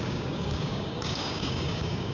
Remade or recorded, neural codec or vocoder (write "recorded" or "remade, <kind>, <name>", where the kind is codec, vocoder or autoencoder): remade, codec, DAC